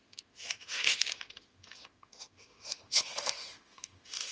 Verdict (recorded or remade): remade